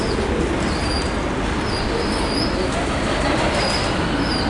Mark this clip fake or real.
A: real